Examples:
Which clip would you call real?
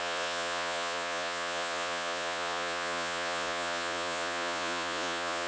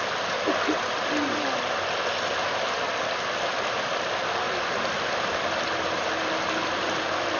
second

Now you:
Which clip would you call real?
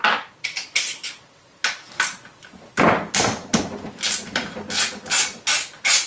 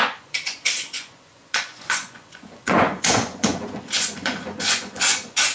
first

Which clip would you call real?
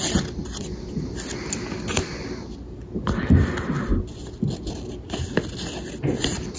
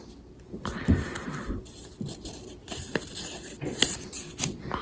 first